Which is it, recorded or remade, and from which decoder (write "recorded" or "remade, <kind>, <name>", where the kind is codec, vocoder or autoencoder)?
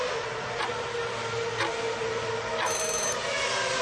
recorded